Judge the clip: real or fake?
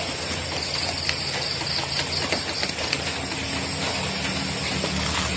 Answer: real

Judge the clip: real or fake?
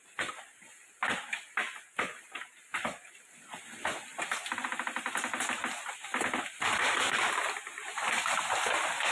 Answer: real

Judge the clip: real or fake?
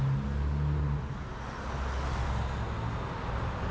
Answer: real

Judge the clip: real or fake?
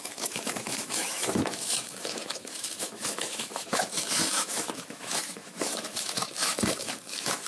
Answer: fake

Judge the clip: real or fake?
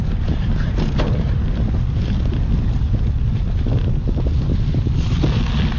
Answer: real